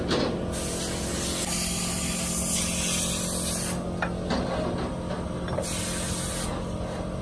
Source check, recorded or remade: recorded